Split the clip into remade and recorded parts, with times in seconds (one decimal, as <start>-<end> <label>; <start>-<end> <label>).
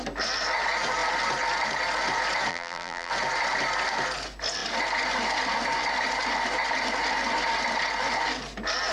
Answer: 0.0-2.5 recorded; 2.5-3.1 remade; 3.1-8.9 recorded